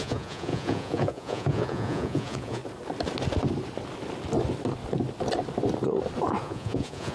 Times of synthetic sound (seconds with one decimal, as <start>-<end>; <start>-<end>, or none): 0.0-2.6; 6.4-7.1